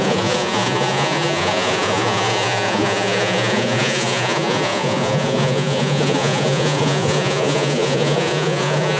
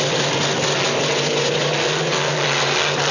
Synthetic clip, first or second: first